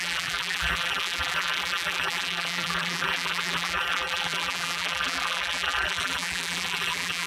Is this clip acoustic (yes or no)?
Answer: no